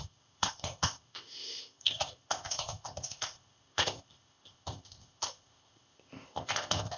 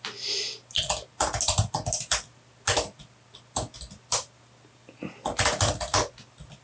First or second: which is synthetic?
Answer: first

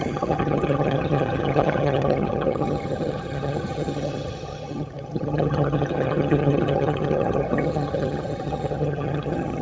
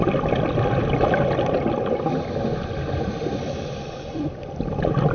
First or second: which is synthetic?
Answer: first